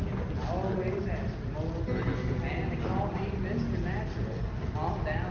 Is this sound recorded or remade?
recorded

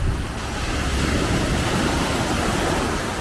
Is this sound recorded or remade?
recorded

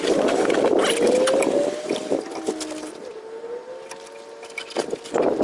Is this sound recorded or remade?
recorded